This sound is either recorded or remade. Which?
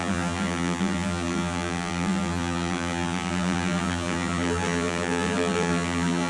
remade